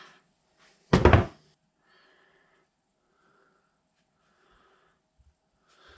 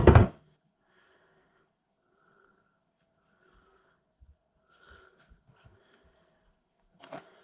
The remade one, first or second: second